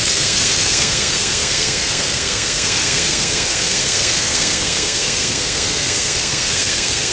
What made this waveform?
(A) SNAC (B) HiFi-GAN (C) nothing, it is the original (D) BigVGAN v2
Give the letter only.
A